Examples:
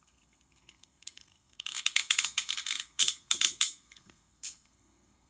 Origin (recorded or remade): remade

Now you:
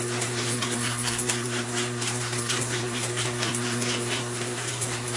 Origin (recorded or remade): remade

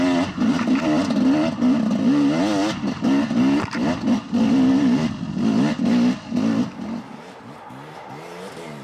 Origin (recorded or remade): recorded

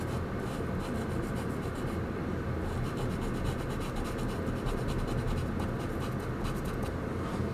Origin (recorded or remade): recorded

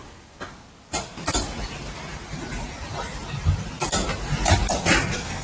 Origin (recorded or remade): recorded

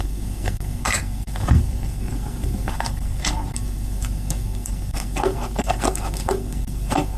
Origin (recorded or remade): remade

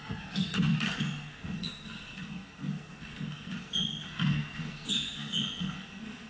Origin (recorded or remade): remade